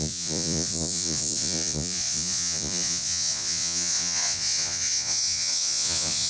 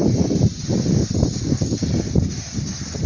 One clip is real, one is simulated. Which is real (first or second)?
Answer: second